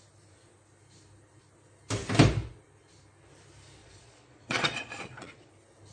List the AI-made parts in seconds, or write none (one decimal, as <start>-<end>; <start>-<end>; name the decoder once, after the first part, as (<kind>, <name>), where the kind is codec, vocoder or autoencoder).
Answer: 3.8-5.5 (vocoder, Vocos)